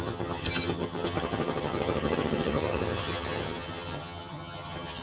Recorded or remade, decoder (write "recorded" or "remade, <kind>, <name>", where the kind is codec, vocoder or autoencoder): remade, vocoder, HiFi-GAN